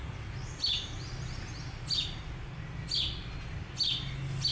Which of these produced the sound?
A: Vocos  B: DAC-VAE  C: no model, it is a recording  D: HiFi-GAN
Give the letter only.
C